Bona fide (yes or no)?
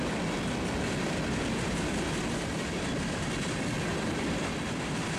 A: yes